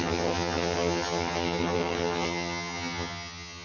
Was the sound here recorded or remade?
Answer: remade